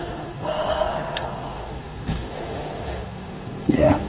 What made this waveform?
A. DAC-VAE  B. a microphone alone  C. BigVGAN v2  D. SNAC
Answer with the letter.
A